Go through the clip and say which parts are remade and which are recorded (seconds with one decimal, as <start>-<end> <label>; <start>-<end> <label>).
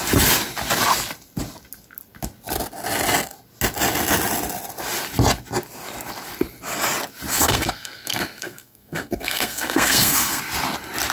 0.0-7.3 recorded; 7.3-10.4 remade; 10.4-11.1 recorded